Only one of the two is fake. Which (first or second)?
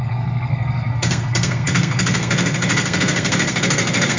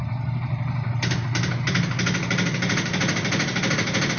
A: first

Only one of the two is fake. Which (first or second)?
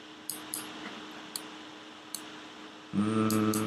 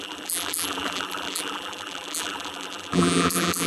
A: second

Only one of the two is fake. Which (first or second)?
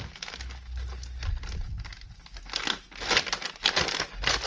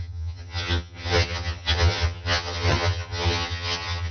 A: second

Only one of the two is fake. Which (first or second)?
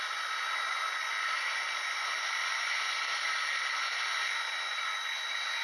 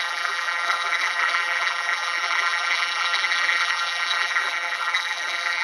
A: second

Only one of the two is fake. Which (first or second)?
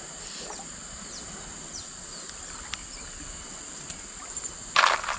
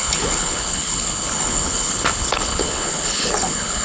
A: second